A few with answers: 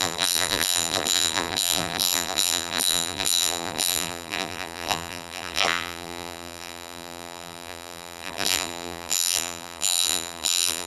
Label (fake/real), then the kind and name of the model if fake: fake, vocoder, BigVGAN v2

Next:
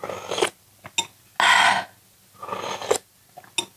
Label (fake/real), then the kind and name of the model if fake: real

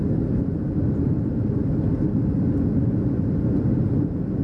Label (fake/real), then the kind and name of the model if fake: real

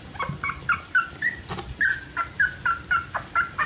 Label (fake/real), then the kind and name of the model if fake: real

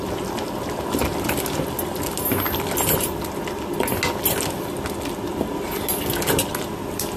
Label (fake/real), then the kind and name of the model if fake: real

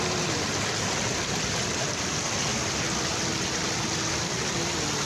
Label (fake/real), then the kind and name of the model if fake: real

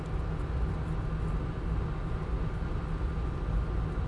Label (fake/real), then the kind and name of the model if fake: real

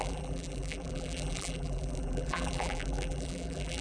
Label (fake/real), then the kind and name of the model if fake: fake, vocoder, BigVGAN v2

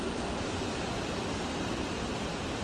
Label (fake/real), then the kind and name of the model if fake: real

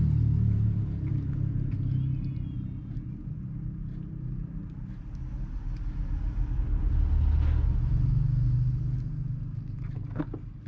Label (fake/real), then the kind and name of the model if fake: real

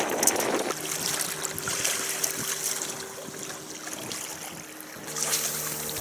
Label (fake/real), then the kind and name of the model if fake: real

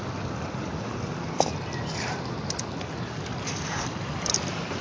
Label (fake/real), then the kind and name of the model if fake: fake, vocoder, BigVGAN v2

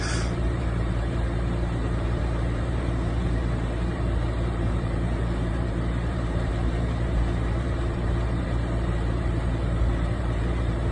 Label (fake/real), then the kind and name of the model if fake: fake, vocoder, BigVGAN v2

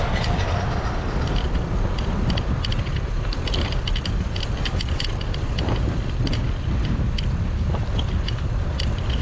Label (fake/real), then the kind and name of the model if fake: fake, vocoder, BigVGAN v2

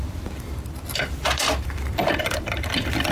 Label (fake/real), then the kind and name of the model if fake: fake, vocoder, BigVGAN v2